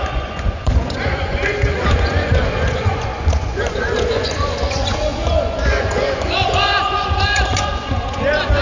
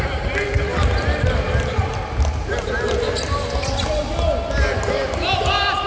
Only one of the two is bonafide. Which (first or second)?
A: second